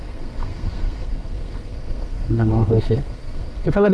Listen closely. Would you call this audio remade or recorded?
remade